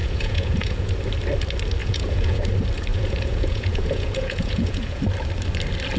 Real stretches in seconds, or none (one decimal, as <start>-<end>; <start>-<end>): 0.9-1.8; 2.4-2.9; 5.0-6.0